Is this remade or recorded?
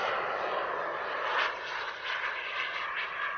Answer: recorded